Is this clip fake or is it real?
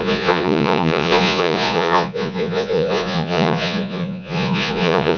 fake